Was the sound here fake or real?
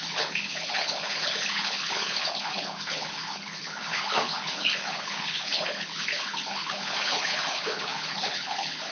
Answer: fake